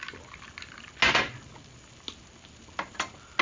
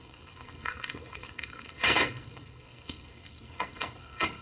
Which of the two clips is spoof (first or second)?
second